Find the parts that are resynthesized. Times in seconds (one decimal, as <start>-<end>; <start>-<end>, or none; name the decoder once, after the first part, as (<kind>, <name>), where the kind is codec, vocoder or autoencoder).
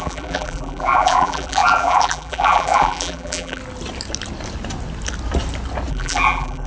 0.0-3.6 (vocoder, BigVGAN v2); 5.9-6.7